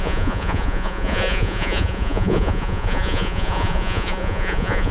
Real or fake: fake